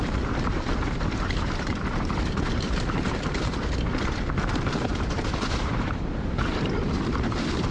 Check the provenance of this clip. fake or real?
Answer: fake